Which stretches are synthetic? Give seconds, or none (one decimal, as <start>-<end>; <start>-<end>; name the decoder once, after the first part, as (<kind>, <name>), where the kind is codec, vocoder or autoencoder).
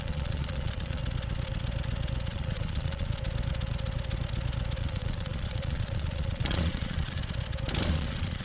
0.0-1.0 (vocoder, Vocos); 2.3-3.1; 4.8-7.2; 7.9-8.4